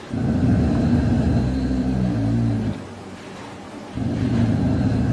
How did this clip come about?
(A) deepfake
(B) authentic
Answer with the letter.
A